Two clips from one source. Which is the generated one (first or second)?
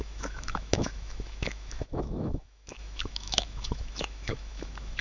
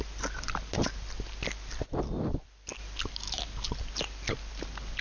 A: first